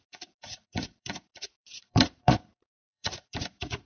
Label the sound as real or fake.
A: fake